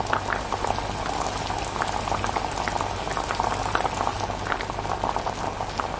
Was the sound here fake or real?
real